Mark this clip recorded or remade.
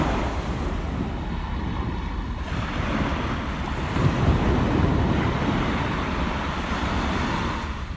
recorded